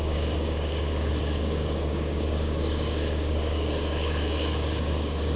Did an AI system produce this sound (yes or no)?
yes